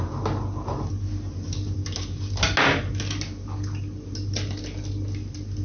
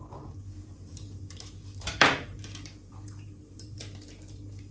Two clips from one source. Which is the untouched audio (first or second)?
first